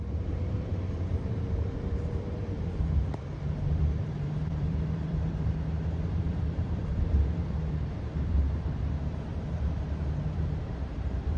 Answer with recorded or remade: remade